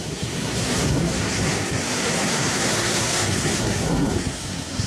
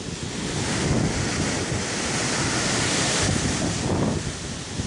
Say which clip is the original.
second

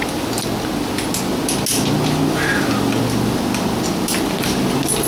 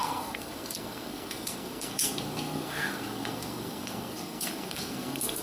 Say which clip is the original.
first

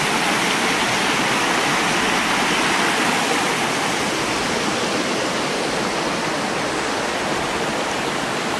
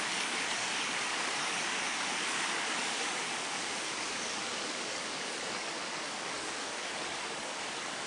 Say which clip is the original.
first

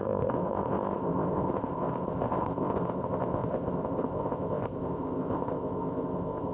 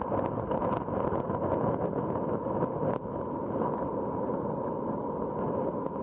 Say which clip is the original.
second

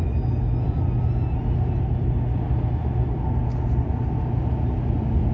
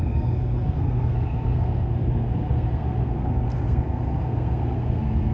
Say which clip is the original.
first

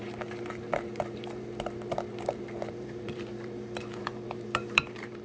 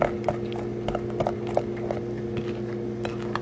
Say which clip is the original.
second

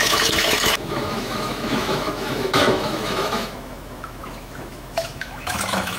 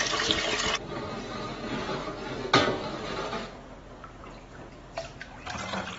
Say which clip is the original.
second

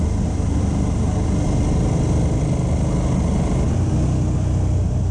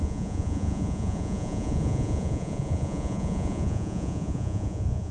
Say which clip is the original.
first